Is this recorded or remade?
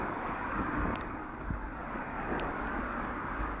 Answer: remade